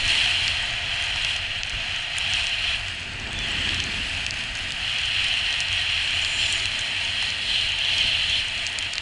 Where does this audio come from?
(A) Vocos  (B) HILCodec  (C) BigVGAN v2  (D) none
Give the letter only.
D